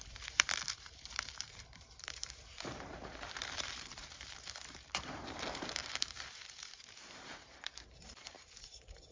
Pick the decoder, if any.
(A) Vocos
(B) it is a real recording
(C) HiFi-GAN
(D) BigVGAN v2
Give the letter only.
D